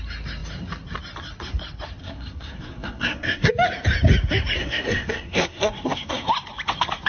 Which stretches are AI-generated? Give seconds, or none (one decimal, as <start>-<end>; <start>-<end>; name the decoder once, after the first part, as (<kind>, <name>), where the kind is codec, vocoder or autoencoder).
2.0-3.5 (codec, SNAC); 4.6-6.3

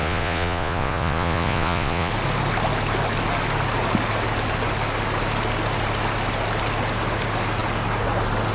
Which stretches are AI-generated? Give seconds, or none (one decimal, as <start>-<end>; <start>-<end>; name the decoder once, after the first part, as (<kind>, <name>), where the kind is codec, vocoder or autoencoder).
0.0-2.1 (vocoder, Vocos)

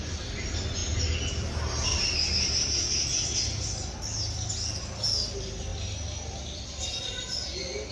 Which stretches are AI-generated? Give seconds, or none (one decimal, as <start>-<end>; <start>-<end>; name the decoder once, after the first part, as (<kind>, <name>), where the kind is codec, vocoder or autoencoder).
none

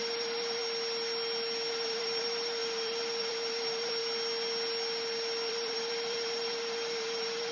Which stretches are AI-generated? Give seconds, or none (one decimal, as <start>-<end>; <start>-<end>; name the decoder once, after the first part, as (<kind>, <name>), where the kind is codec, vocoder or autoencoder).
0.0-0.6 (vocoder, BigVGAN v2); 1.7-4.0; 5.5-7.5